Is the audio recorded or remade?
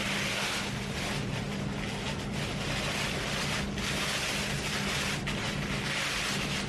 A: recorded